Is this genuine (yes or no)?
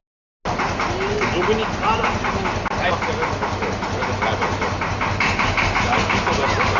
yes